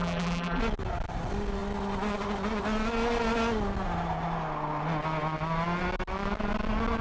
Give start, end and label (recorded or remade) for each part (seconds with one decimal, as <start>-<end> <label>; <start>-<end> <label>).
0.0-0.6 remade; 0.6-7.0 recorded